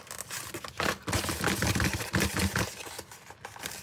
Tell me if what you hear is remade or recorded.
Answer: recorded